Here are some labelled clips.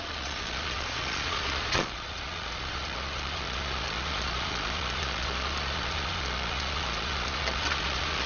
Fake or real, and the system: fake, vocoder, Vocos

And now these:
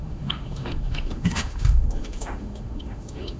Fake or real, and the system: fake, autoencoder, DAC-VAE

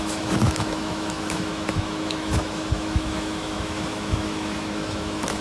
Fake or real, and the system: fake, autoencoder, DAC-VAE